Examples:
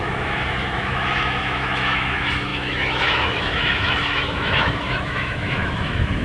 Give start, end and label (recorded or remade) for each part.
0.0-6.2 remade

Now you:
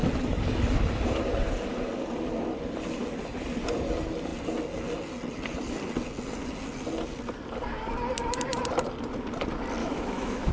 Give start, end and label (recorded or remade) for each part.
0.0-9.8 recorded; 9.8-10.5 remade

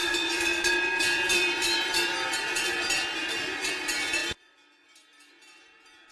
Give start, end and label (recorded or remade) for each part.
0.0-3.7 remade; 3.7-6.1 recorded

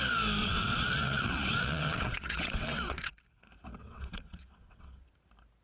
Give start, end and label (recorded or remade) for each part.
0.0-0.4 recorded; 0.4-3.1 remade; 3.1-3.8 recorded; 3.8-5.1 remade; 5.1-5.6 recorded

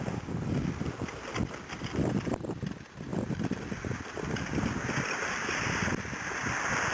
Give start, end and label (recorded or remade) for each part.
0.0-6.9 recorded

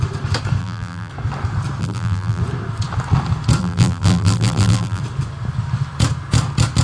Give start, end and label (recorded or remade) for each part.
0.0-0.6 recorded; 0.6-1.1 remade; 1.1-1.8 recorded; 1.8-2.4 remade; 2.4-3.6 recorded; 3.6-5.0 remade; 5.0-6.8 recorded